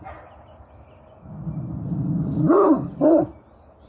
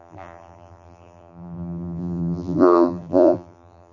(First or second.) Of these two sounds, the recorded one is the first